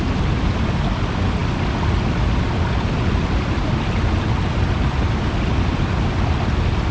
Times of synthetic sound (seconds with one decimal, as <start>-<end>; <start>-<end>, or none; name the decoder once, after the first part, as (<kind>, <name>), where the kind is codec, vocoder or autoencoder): none